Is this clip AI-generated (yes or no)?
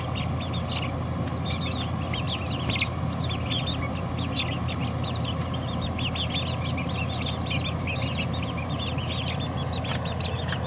no